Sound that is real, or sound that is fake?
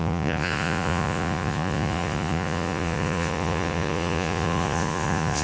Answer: fake